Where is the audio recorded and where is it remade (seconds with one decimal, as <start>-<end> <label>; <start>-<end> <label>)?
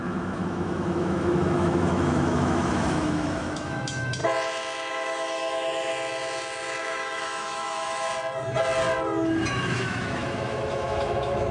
0.0-4.2 remade; 4.2-4.9 recorded; 4.9-5.9 remade; 5.9-6.8 recorded; 6.8-8.1 remade; 8.1-9.5 recorded; 9.5-11.5 remade